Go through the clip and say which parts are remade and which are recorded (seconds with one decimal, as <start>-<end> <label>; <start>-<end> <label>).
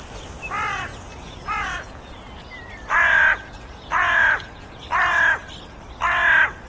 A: 0.0-0.9 recorded; 0.9-4.9 remade; 4.9-6.7 recorded